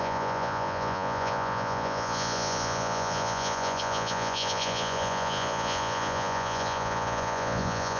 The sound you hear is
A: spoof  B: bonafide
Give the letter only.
A